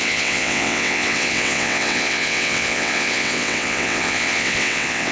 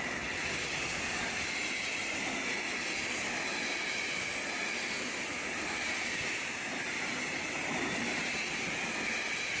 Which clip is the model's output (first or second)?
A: first